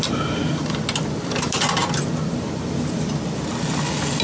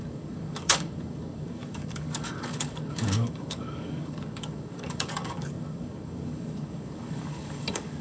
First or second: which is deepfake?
second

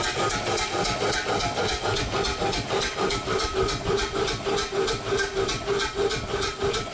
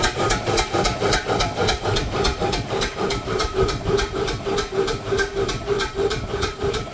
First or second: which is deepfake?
second